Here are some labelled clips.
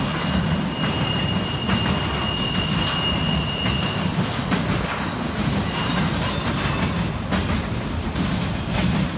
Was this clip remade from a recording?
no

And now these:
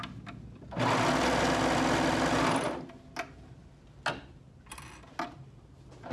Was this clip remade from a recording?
no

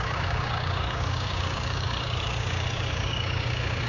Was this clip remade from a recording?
yes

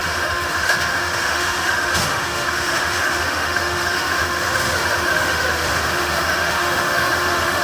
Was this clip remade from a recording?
yes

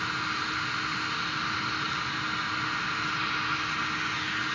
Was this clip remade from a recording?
no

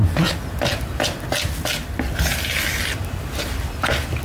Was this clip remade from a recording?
no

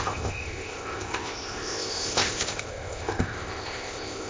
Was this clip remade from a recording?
yes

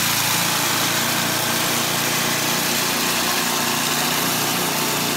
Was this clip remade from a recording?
no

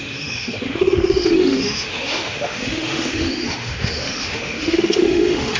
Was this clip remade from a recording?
yes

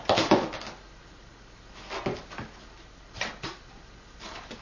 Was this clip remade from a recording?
no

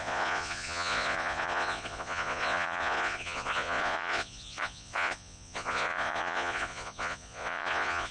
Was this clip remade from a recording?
yes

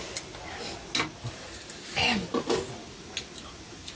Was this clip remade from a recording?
no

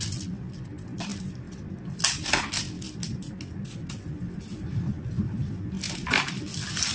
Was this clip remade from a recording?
no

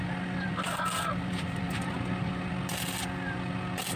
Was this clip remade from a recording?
no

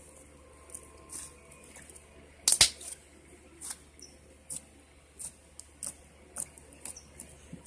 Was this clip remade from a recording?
no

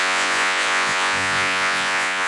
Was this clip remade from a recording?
yes